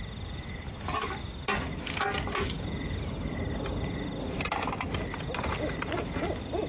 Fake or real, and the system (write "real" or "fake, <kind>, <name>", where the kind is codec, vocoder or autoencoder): real